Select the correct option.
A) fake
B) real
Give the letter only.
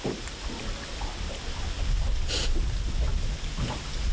B